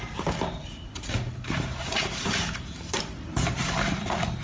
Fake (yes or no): yes